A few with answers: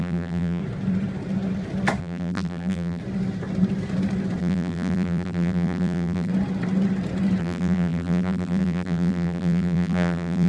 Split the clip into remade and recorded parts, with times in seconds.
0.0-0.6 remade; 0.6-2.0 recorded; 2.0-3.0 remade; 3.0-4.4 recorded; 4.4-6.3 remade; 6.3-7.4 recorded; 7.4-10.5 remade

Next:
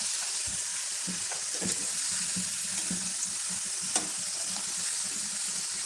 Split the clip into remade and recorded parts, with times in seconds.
0.0-2.1 remade; 2.1-5.9 recorded